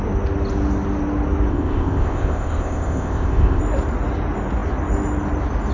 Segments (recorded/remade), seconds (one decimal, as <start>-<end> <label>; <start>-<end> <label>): 0.0-1.5 recorded; 1.5-3.6 remade; 3.6-5.7 recorded